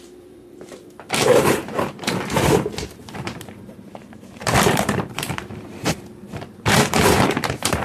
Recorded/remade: remade